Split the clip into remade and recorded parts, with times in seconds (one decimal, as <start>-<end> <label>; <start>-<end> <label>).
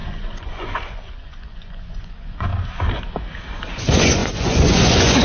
0.0-2.5 remade; 2.5-3.7 recorded; 3.7-5.2 remade